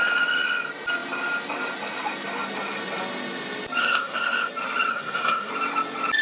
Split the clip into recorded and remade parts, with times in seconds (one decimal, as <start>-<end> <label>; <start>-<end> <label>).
0.0-3.8 recorded; 3.8-4.5 remade; 4.5-4.9 recorded; 4.9-5.5 remade; 5.5-6.2 recorded